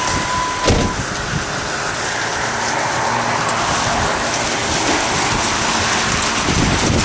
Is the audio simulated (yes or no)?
no